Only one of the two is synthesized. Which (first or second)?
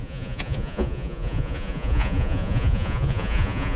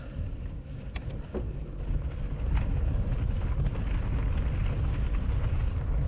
first